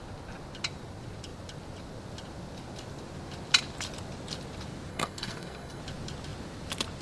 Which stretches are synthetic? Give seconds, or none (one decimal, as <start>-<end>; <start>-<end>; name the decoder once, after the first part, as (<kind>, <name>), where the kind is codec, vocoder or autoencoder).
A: 4.9-5.8 (codec, SNAC)

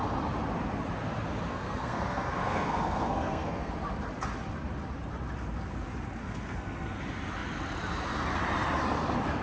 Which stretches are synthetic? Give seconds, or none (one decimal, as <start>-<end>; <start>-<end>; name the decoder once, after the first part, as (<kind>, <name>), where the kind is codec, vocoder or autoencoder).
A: 1.5-3.7 (codec, SNAC); 6.2-7.0

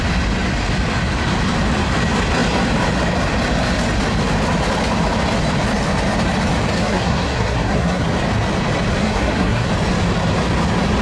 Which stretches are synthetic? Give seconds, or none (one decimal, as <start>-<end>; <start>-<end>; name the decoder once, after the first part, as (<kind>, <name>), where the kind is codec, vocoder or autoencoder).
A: 6.8-8.0 (codec, SNAC); 9.0-9.7

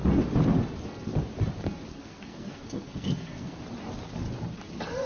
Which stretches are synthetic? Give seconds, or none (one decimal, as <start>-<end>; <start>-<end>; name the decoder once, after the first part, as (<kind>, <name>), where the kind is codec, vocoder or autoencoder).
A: 1.9-3.6 (codec, SNAC)

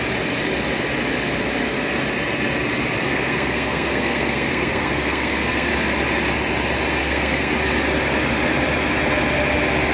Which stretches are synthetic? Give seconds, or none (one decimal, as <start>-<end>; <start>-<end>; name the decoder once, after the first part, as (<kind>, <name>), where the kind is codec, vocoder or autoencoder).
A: 3.0-5.7 (codec, SNAC); 7.0-7.5

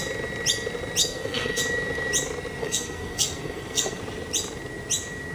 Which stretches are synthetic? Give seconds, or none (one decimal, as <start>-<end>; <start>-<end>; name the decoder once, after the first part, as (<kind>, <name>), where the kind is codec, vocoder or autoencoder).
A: 1.0-1.6 (codec, SNAC); 2.6-4.0

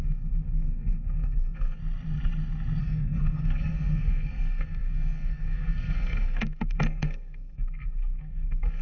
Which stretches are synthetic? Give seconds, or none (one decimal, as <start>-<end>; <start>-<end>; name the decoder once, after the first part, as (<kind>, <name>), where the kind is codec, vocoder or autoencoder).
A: 0.0-1.8 (codec, SNAC); 2.8-8.8

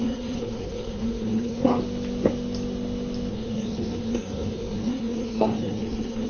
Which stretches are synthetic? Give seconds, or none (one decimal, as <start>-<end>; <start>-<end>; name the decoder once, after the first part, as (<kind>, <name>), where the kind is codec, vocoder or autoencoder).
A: 0.0-1.8 (codec, SNAC); 3.3-6.3